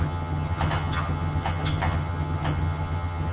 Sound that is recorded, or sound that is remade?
remade